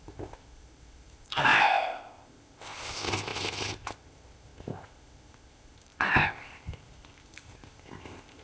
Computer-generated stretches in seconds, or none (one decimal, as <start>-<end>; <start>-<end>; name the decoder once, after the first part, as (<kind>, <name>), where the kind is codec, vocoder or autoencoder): 0.0-8.4 (codec, ZipCodec)